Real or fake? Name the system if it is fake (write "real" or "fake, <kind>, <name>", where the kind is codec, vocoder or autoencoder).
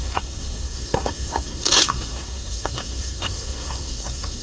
fake, codec, SNAC